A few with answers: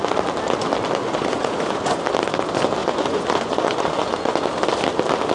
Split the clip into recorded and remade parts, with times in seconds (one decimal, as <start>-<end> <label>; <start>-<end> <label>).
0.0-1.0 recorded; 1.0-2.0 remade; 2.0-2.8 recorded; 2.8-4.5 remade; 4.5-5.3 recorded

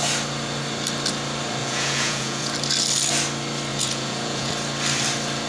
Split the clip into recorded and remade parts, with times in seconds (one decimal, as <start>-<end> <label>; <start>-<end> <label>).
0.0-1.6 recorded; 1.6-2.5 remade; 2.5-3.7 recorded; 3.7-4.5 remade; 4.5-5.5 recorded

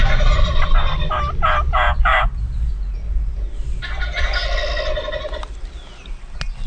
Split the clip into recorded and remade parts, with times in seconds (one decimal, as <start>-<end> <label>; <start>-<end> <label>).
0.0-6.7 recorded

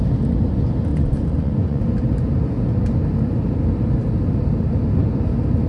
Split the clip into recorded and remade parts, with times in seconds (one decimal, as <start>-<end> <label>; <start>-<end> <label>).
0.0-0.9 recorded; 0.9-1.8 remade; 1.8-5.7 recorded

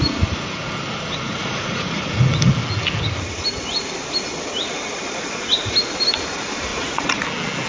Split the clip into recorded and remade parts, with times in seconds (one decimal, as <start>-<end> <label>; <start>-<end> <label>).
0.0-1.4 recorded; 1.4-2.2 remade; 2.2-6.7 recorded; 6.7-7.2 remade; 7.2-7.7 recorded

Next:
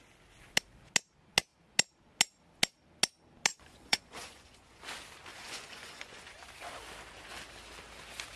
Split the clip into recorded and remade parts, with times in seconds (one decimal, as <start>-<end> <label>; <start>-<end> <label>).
0.0-3.5 recorded; 3.5-4.8 remade; 4.8-5.3 recorded; 5.3-6.3 remade; 6.3-8.4 recorded

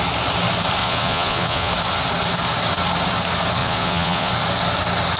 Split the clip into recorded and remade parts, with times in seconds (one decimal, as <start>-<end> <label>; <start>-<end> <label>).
0.0-0.8 recorded; 0.8-1.7 remade; 1.7-3.6 recorded; 3.6-4.3 remade; 4.3-5.2 recorded

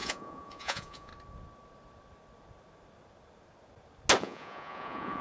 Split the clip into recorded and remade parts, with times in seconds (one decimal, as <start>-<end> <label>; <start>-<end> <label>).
0.0-1.1 remade; 1.1-4.2 recorded; 4.2-5.2 remade